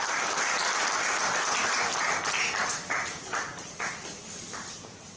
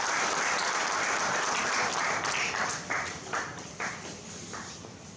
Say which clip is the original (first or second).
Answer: first